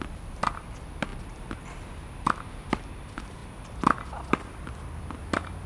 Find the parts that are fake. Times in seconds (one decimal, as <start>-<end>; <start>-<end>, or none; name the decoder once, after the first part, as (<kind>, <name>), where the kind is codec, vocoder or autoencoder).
none